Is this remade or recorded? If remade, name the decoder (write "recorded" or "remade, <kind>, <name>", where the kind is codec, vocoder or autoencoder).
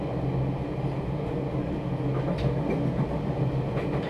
recorded